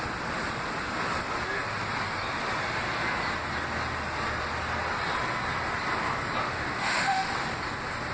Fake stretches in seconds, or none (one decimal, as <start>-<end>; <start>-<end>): 6.4-7.3